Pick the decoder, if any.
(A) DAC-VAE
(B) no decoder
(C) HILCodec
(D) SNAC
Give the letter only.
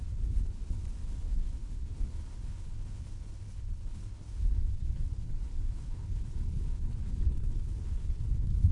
C